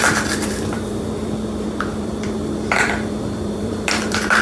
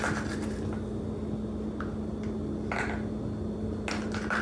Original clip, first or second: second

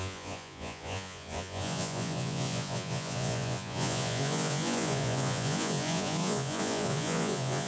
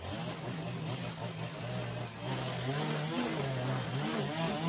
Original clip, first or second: second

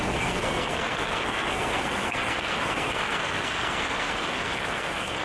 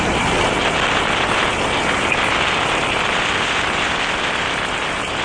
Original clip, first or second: second